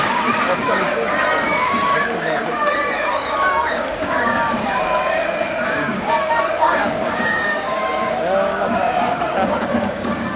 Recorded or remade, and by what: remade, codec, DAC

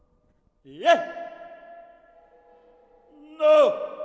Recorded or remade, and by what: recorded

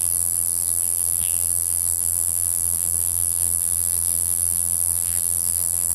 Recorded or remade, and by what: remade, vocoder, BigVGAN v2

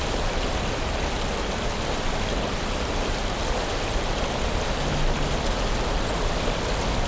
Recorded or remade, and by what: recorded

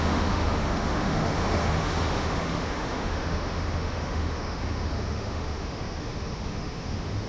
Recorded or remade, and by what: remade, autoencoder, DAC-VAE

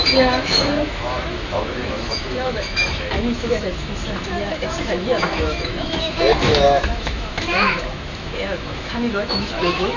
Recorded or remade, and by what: remade, autoencoder, DAC-VAE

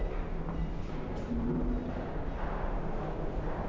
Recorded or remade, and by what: recorded